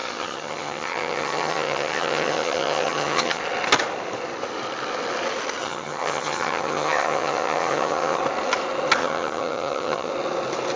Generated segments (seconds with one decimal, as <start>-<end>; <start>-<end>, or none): 0.0-3.4; 5.6-8.2; 9.0-10.1